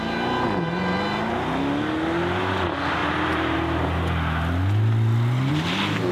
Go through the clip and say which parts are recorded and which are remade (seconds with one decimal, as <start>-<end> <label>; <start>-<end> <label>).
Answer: 0.0-6.1 recorded